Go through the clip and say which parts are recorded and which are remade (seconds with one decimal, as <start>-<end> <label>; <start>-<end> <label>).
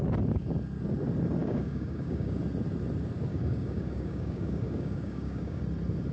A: 0.0-1.4 recorded; 1.4-2.4 remade; 2.4-3.3 recorded; 3.3-5.6 remade; 5.6-6.1 recorded